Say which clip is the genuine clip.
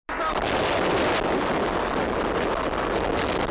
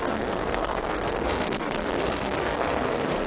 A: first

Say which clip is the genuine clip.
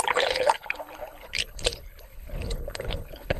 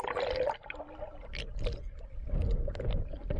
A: second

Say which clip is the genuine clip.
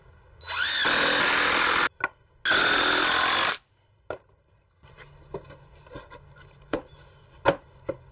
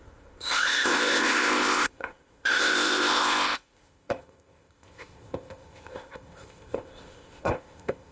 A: first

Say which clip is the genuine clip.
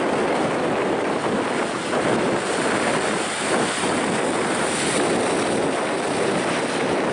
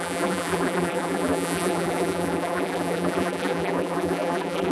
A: first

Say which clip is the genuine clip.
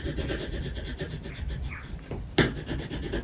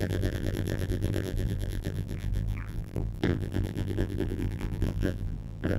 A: first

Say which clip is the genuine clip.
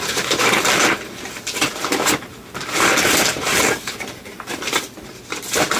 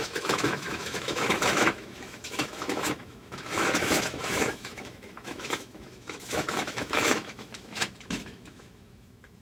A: first